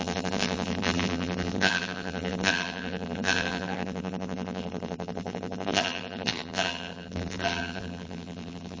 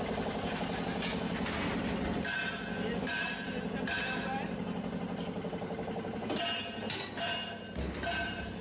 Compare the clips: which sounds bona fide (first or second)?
second